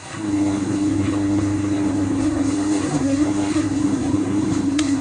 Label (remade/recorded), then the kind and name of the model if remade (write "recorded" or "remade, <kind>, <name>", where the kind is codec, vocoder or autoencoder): remade, codec, SNAC